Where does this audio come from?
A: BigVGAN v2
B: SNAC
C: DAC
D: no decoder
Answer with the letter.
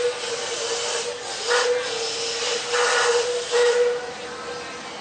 D